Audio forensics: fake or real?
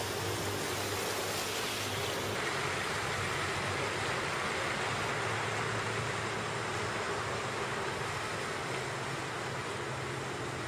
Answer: real